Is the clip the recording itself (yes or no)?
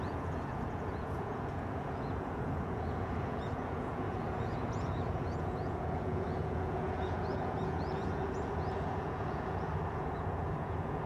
no